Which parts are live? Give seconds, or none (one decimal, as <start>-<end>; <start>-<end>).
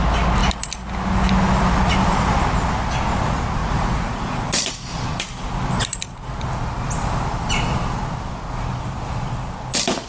0.0-3.6; 4.5-10.1